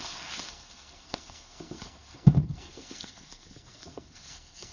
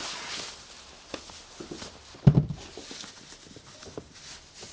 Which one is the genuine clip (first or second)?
second